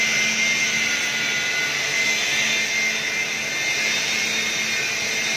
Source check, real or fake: real